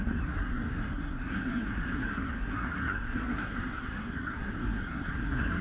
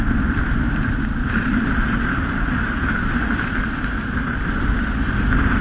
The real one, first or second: second